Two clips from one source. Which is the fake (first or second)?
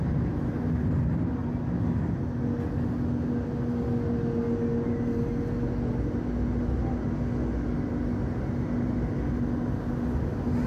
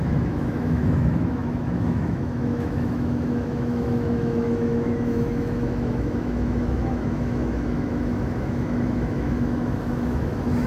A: second